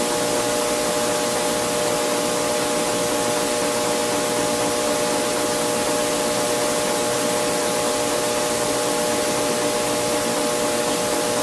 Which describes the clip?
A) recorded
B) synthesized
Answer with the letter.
A